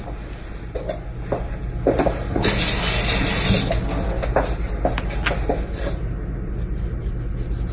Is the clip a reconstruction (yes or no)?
no